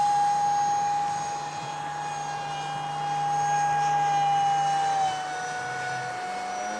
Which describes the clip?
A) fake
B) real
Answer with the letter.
B